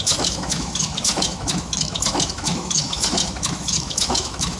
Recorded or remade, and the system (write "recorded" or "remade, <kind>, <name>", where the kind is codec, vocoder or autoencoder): remade, autoencoder, DAC-VAE